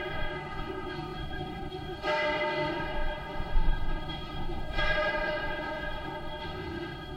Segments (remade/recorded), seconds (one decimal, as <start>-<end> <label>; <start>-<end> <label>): 0.0-7.2 remade